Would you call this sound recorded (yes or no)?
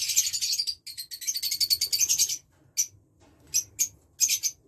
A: yes